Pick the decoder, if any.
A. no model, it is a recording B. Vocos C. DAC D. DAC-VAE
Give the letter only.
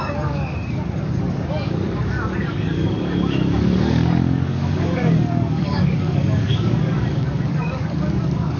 C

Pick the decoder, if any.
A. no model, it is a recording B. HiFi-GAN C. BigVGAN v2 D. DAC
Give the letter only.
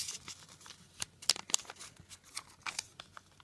A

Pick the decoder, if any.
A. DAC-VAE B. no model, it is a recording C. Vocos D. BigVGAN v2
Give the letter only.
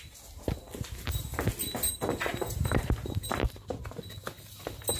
B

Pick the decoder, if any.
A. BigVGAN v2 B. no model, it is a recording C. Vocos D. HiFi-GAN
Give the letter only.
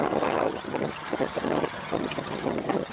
D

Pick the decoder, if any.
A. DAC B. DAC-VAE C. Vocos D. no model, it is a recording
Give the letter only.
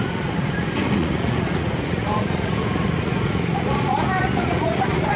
C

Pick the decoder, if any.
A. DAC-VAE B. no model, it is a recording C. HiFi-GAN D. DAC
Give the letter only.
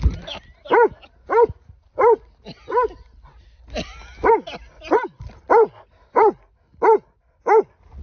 B